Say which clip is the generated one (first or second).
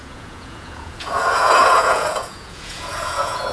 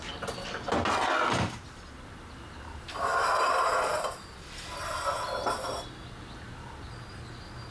first